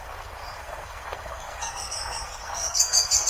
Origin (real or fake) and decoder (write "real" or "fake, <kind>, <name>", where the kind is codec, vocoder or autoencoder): fake, codec, SNAC